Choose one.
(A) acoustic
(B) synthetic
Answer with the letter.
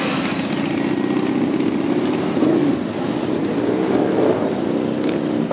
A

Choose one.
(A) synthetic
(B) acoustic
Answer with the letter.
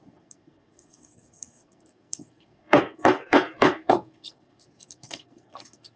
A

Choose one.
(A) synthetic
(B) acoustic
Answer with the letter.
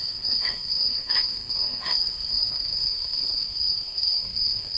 A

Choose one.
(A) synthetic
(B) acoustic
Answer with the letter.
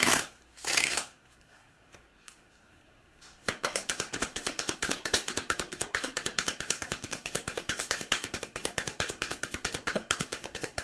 A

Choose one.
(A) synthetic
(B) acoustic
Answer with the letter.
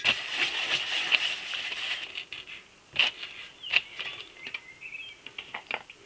B